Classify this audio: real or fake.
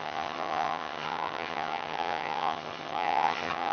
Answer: fake